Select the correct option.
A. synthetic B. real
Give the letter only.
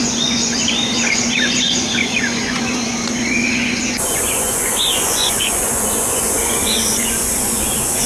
A